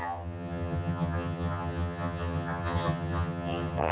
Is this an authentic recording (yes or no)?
no